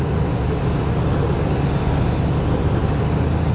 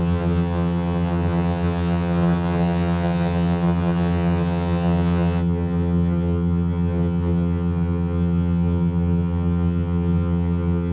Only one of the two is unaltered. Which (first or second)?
first